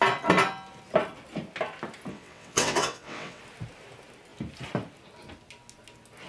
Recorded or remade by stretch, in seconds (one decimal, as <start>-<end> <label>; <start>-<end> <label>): 0.0-2.1 recorded; 2.1-3.4 remade; 3.4-6.3 recorded